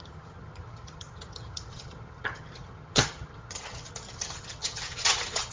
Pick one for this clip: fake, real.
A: fake